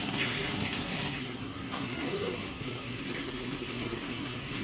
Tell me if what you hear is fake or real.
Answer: fake